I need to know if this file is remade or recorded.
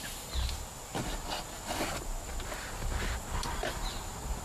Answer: recorded